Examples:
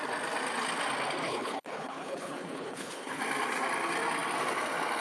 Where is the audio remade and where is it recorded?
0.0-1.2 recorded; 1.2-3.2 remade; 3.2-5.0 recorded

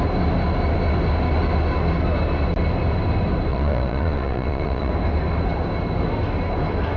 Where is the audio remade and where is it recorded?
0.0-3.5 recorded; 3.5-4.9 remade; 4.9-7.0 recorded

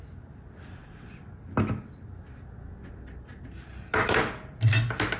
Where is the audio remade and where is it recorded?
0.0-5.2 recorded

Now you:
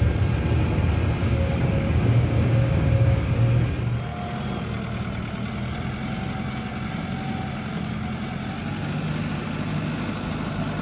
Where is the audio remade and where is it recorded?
0.0-1.2 recorded; 1.2-3.3 remade; 3.3-10.8 recorded